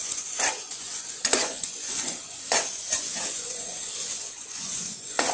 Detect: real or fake fake